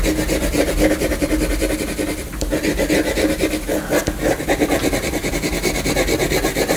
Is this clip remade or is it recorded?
recorded